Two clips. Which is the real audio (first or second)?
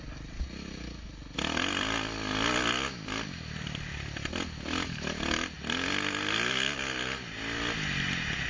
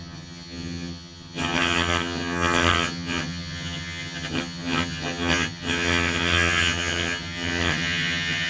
first